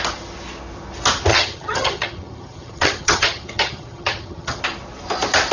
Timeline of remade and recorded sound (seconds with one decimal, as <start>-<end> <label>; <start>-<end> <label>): 0.0-1.3 recorded; 1.3-4.6 remade; 4.6-5.5 recorded